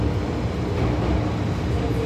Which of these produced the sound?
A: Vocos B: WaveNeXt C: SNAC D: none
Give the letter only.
D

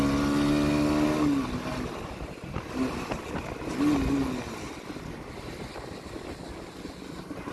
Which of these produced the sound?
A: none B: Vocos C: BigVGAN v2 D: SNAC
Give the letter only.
A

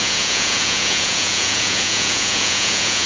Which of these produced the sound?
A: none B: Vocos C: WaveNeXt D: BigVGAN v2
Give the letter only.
B